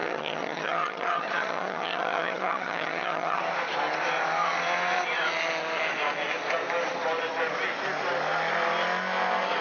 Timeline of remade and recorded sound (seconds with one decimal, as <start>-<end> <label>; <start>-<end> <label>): 0.0-3.4 remade; 3.4-9.6 recorded